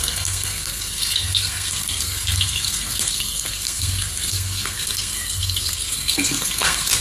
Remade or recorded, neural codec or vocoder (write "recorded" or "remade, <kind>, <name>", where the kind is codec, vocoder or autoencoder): remade, codec, SNAC